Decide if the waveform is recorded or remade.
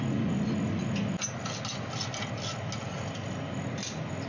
recorded